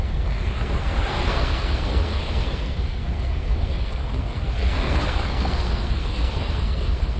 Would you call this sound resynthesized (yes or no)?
yes